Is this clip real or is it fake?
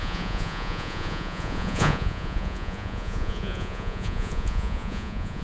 fake